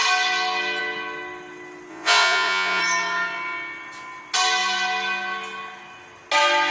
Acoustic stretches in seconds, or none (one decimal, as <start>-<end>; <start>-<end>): 0.0-1.9; 2.8-6.7